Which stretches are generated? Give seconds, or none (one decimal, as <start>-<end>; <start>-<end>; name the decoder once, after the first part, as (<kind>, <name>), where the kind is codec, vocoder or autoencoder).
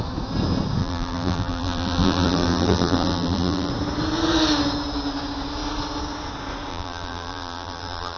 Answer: 0.8-3.7 (vocoder, BigVGAN v2); 6.7-8.2